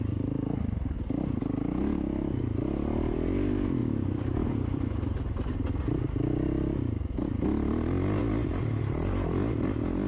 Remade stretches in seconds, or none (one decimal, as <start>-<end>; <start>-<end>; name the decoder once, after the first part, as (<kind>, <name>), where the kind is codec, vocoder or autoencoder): 3.8-4.8 (vocoder, BigVGAN v2); 8.2-8.8